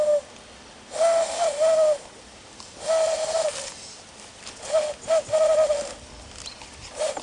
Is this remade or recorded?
recorded